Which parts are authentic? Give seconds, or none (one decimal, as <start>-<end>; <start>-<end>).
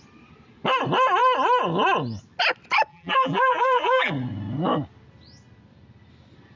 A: 0.0-2.9; 4.1-6.6